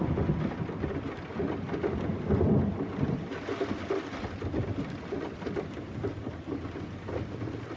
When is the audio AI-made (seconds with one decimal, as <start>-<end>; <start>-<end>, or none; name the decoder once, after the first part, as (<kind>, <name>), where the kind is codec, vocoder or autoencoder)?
none